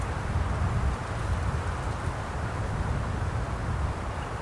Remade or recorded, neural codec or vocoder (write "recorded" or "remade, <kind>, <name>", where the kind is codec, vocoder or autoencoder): recorded